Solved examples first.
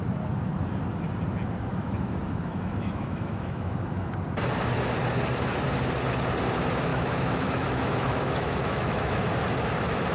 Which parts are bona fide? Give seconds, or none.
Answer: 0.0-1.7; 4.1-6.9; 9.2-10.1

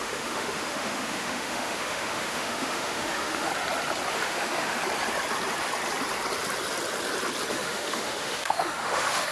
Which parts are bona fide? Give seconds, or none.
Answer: 3.5-4.1; 4.8-7.5

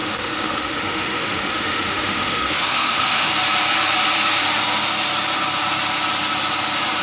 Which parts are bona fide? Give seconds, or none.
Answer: 3.3-7.0

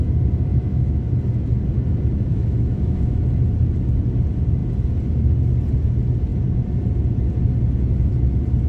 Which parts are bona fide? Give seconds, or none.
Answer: 0.0-0.5; 1.1-2.3; 3.2-8.7